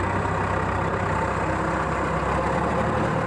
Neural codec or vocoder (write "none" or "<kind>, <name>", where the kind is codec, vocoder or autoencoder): none